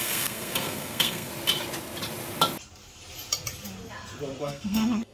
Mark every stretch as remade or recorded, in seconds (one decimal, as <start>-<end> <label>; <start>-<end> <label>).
0.0-1.3 remade; 1.3-4.4 recorded; 4.4-5.1 remade